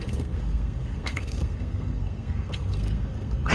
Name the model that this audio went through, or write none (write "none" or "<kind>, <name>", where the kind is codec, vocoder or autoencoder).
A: codec, SNAC